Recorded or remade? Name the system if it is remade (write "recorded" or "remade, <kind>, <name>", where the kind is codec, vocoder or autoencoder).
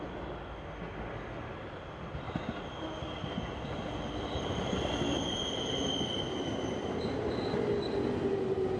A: recorded